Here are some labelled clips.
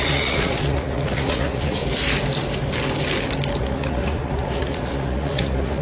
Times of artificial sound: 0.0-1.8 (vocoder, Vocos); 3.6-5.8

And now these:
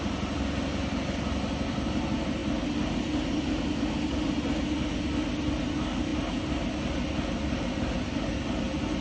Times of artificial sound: none

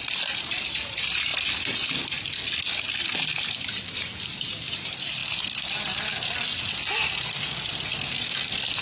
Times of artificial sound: 0.0-1.3 (vocoder, BigVGAN v2); 3.5-5.2

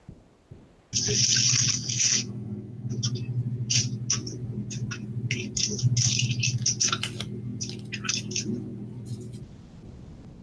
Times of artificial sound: 1.7-2.9 (codec, SNAC)

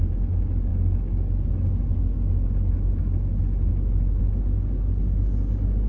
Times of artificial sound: none

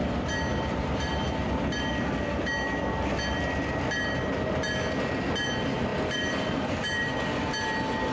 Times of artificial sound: 5.9-7.1 (vocoder, BigVGAN v2)

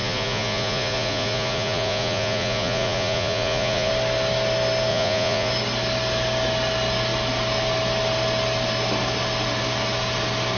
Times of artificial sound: 0.0-3.9 (vocoder, Vocos); 4.9-5.5